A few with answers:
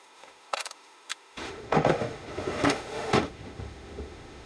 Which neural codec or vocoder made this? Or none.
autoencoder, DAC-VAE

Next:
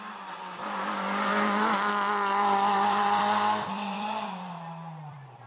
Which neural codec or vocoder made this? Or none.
vocoder, BigVGAN v2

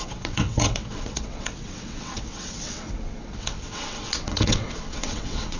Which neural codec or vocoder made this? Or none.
vocoder, WaveNeXt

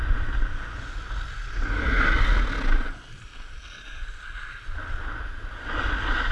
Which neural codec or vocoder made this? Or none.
none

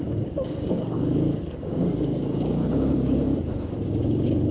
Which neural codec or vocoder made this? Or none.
codec, DAC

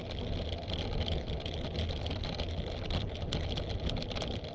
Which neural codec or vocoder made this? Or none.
none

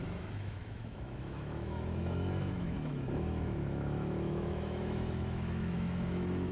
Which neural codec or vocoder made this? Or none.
autoencoder, DAC-VAE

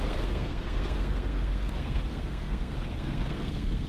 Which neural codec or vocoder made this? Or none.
codec, SNAC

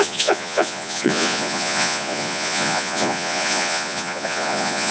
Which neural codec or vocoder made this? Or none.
vocoder, Vocos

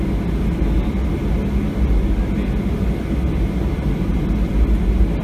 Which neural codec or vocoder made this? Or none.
none